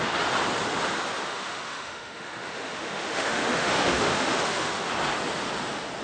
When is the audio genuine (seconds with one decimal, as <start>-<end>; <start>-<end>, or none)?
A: 0.0-1.3; 4.9-6.0